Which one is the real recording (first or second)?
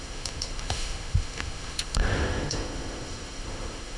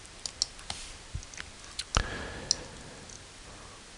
second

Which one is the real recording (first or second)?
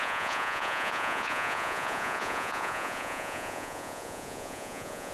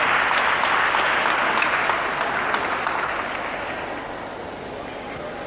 second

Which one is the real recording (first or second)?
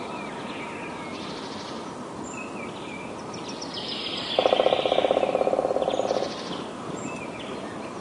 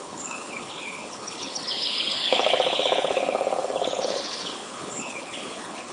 first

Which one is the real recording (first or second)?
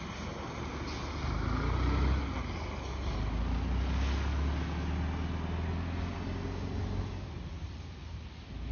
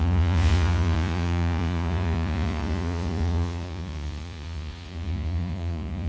first